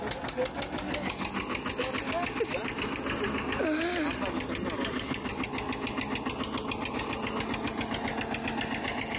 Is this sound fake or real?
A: real